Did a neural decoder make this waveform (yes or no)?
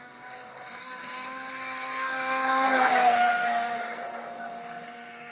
yes